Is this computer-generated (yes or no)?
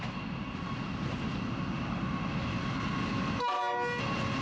no